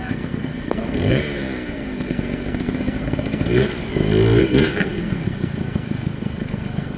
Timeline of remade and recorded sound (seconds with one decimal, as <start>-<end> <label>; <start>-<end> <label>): 0.0-3.7 remade; 3.7-4.4 recorded; 4.4-7.0 remade